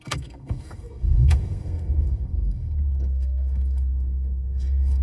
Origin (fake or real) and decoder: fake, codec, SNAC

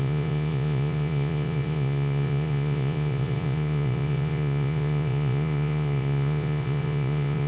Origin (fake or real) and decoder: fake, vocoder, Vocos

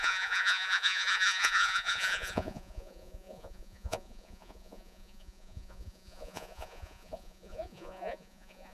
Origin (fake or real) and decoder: fake, vocoder, Vocos